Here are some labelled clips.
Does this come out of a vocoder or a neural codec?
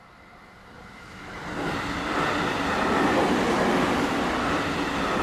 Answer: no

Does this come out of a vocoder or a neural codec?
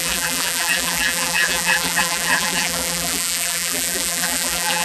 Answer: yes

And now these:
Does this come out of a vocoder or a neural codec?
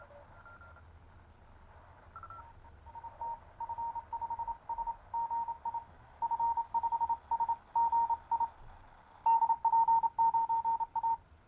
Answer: no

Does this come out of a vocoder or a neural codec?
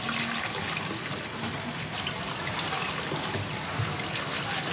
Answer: no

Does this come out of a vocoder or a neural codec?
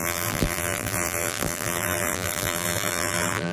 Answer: yes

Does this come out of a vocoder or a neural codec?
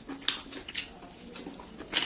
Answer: no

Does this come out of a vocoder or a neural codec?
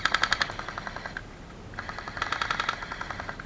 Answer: no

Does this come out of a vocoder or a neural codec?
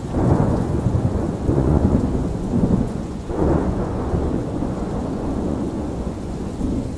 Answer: yes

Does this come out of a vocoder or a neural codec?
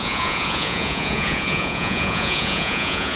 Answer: yes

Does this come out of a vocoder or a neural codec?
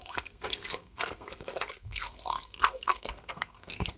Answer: yes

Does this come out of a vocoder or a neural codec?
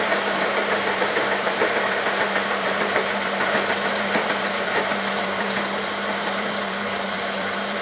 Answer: yes